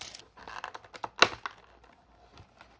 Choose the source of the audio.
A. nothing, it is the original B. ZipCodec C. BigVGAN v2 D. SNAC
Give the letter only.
A